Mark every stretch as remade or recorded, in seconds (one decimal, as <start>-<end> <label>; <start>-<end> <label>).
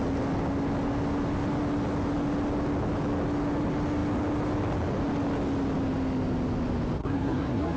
0.0-7.0 recorded; 7.0-7.8 remade